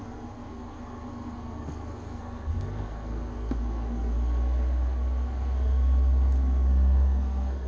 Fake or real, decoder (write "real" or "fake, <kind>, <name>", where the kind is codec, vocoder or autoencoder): fake, codec, SNAC